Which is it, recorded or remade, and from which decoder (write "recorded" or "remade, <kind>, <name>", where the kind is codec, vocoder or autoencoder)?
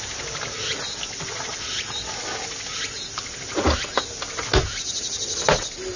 recorded